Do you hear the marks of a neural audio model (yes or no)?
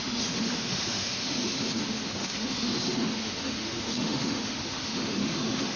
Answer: yes